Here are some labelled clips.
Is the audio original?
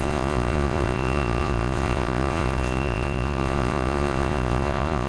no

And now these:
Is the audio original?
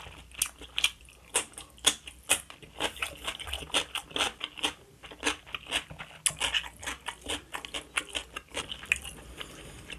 yes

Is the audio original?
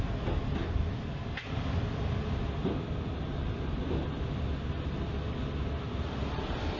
yes